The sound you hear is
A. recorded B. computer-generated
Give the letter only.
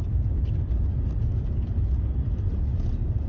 A